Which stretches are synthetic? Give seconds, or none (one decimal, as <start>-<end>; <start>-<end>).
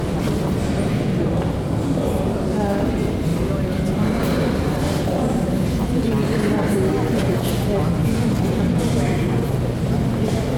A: 3.3-6.7